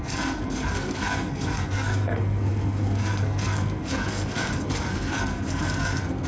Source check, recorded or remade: remade